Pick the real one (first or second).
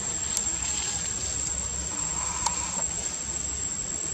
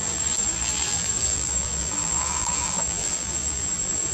first